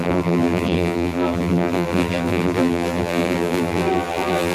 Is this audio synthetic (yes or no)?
yes